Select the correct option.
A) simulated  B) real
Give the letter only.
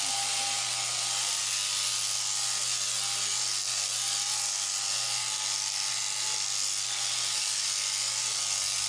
B